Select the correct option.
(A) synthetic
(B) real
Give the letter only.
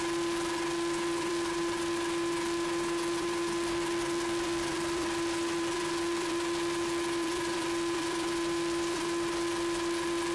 A